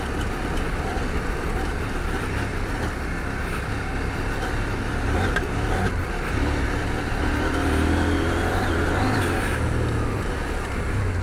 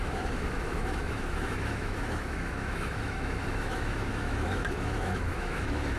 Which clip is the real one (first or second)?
first